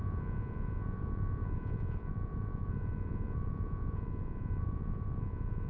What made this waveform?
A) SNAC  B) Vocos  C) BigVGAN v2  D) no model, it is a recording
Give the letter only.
B